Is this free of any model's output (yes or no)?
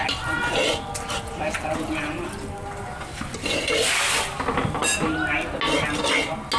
yes